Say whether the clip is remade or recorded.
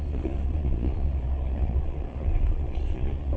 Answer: remade